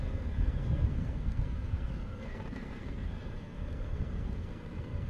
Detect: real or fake fake